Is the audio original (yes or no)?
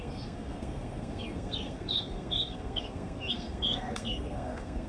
no